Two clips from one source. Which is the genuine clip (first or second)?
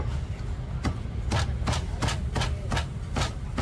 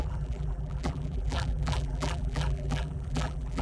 first